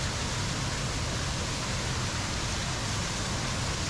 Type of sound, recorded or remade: recorded